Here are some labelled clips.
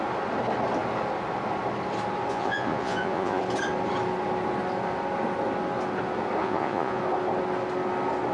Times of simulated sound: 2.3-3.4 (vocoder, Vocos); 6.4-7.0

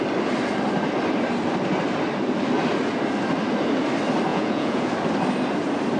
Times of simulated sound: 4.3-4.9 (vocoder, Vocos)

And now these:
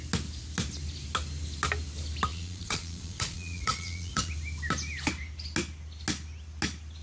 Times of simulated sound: 2.3-4.3 (vocoder, Vocos)

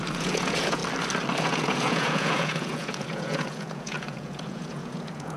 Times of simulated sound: 0.0-0.8 (vocoder, Vocos); 1.4-5.4

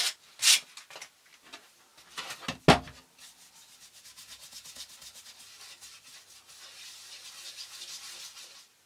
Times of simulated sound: none

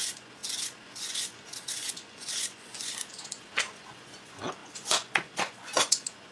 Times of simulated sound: 0.0-6.3 (vocoder, Vocos)

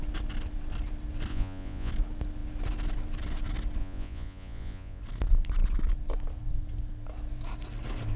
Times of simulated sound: 1.3-1.9 (vocoder, Vocos); 3.8-5.0

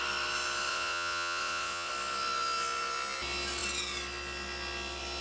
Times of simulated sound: 0.7-1.9 (vocoder, Vocos)